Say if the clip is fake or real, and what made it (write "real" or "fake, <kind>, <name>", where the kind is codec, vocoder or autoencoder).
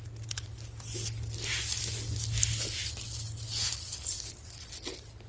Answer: real